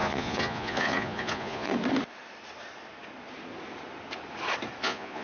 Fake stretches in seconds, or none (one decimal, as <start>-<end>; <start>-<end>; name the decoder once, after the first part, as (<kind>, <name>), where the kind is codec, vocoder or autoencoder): 0.0-1.7 (vocoder, Vocos); 4.8-5.2

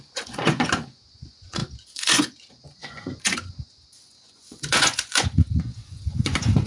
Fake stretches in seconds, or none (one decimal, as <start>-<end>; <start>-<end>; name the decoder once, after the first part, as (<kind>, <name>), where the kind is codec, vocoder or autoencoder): 0.0-6.7 (vocoder, Vocos)

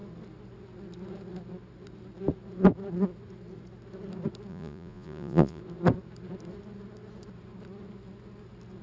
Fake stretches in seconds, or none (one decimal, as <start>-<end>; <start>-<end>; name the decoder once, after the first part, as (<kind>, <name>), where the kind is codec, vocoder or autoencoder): 4.5-5.6 (vocoder, Vocos)